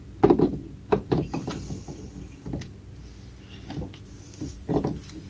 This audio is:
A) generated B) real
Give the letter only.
B